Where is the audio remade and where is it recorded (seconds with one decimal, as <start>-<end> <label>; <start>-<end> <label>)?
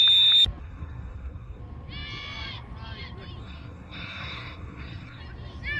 0.0-0.6 recorded; 0.6-1.6 remade; 1.6-3.4 recorded; 3.4-5.2 remade; 5.2-5.8 recorded